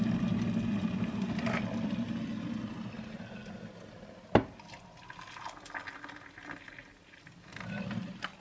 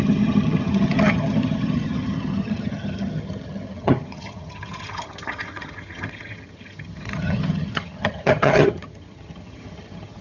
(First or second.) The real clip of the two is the first